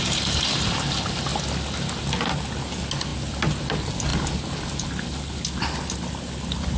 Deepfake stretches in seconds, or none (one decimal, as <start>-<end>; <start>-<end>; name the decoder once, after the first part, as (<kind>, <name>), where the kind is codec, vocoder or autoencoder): none